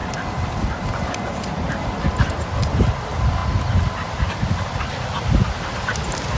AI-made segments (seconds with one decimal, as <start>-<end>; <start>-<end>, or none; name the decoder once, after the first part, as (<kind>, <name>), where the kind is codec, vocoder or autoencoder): none